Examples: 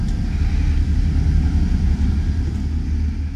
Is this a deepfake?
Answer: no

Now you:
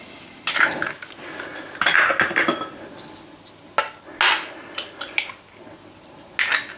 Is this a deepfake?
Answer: no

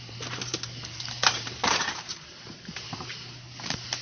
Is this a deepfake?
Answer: yes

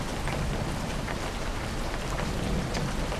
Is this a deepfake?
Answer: yes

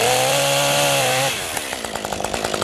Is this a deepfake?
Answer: yes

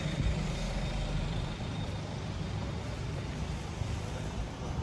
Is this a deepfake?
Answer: yes